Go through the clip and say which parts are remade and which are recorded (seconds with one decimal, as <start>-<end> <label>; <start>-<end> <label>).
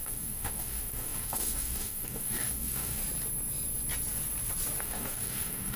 0.0-3.0 remade; 3.0-4.8 recorded; 4.8-5.8 remade